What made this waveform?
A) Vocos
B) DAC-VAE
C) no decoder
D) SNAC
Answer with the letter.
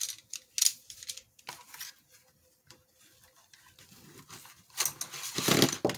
C